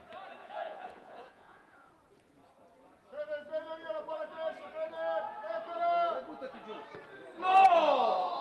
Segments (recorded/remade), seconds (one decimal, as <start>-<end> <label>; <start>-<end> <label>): 0.0-0.4 recorded; 0.4-1.9 remade; 1.9-8.4 recorded